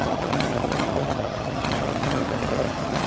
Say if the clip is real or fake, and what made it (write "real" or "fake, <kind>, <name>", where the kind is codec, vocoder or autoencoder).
fake, vocoder, HiFi-GAN